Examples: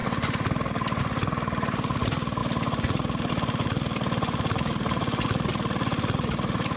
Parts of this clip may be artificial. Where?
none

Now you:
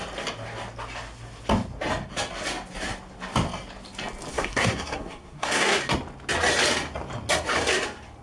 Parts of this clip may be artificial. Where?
4.3-5.8 (codec, SNAC)